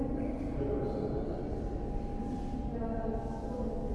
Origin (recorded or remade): recorded